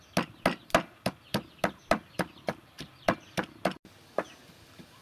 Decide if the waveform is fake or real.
real